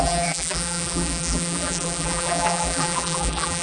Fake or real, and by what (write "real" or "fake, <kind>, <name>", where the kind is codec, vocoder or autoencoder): fake, vocoder, BigVGAN v2